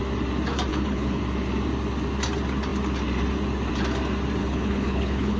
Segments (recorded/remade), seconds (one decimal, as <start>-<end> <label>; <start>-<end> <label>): 0.0-0.7 recorded; 0.7-1.2 remade; 1.2-4.4 recorded; 4.4-5.4 remade